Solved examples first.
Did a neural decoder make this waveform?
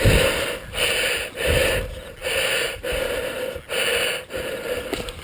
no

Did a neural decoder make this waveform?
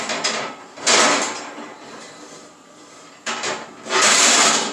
yes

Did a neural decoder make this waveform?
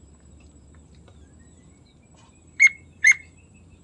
yes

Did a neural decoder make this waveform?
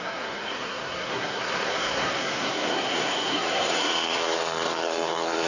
yes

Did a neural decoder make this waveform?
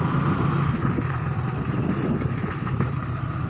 no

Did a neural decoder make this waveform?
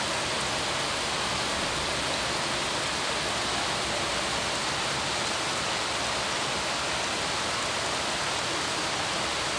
no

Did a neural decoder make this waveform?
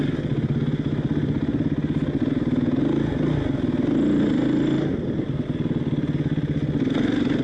no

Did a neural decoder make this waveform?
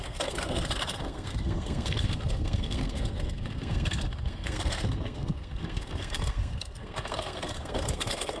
yes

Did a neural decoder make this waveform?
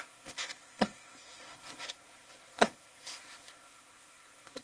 yes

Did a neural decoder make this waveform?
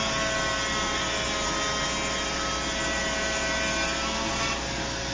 no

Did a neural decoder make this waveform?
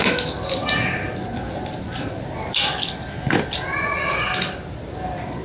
no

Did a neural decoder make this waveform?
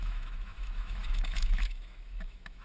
yes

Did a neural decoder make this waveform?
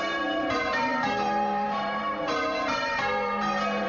yes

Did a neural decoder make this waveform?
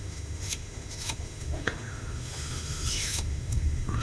yes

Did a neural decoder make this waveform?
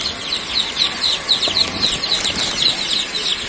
no